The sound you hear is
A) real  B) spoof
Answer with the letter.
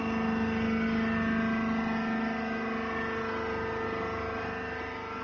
A